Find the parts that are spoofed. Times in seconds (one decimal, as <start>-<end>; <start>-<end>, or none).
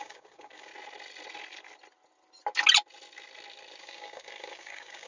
0.0-0.7; 3.8-5.1